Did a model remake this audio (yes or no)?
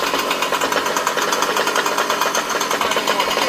no